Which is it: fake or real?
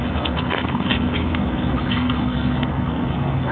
fake